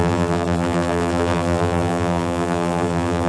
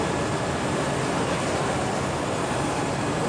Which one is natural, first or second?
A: second